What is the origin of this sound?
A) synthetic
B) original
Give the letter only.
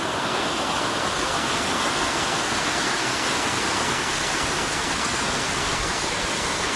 A